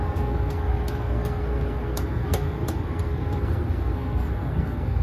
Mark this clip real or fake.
fake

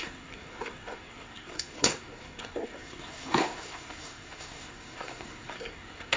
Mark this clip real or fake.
fake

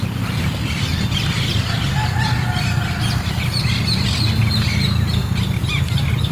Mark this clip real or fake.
real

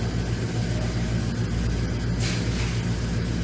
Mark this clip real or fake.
real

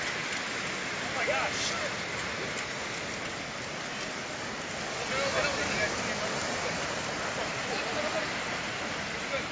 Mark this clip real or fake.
real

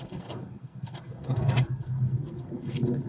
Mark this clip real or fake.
fake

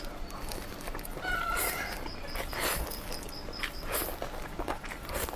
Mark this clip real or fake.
real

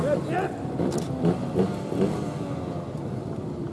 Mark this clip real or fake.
real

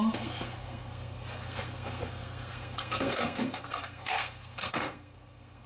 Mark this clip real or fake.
fake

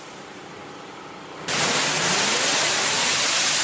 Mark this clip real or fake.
real